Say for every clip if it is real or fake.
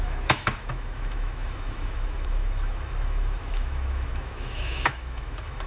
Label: fake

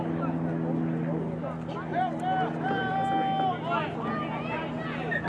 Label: real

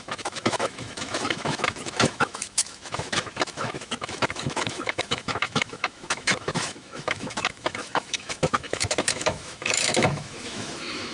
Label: fake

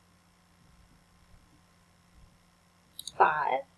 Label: real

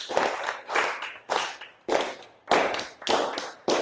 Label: real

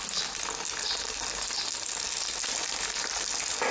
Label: real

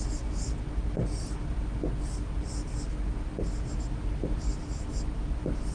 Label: real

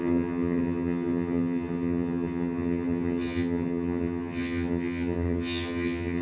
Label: fake